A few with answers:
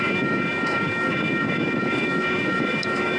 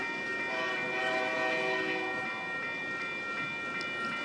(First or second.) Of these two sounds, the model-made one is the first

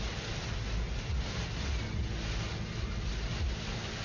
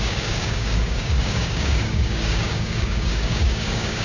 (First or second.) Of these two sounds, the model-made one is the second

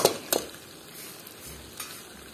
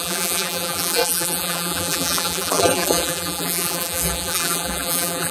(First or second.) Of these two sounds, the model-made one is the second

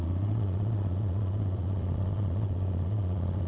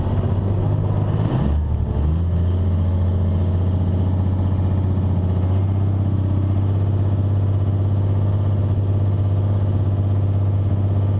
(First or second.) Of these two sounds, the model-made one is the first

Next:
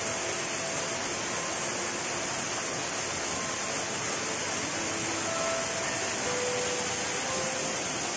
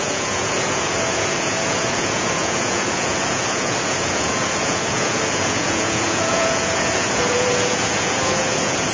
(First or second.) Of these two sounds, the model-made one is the second